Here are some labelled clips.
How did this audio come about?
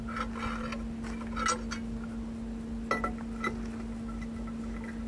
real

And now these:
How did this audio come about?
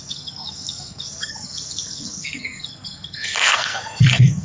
fake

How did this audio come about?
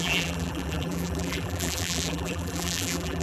fake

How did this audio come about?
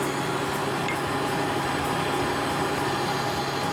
real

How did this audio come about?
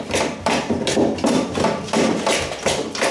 fake